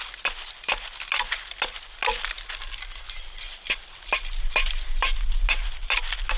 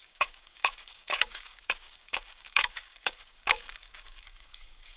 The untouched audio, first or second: first